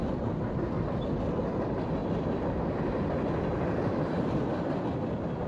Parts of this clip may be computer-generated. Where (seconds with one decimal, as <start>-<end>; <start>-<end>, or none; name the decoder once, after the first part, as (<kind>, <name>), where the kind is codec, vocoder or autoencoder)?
0.0-0.7 (vocoder, BigVGAN v2); 2.0-5.5